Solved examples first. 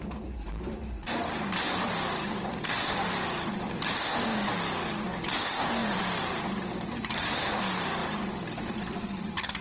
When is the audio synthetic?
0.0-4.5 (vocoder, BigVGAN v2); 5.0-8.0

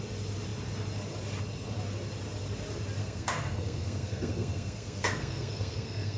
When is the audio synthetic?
3.0-6.2 (codec, SNAC)

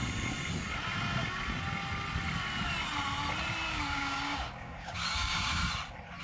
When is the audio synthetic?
3.7-5.6 (codec, DAC)

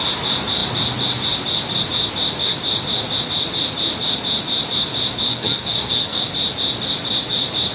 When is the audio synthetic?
5.3-6.2 (codec, SNAC)

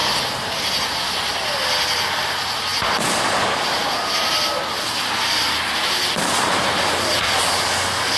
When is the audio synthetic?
none

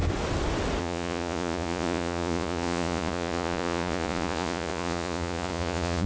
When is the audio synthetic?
0.8-6.1 (vocoder, Vocos)

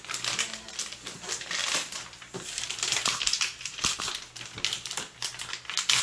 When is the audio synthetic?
1.6-4.0 (vocoder, BigVGAN v2)

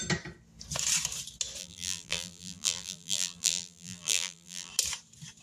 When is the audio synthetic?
1.6-4.7 (vocoder, BigVGAN v2)